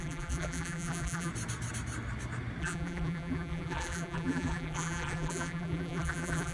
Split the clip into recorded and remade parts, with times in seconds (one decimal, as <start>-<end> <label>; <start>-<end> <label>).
0.0-1.3 remade; 1.3-2.6 recorded; 2.6-6.5 remade